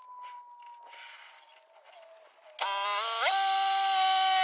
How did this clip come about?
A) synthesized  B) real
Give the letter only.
B